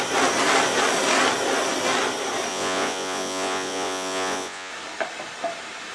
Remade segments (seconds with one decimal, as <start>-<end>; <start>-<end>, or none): 2.5-4.7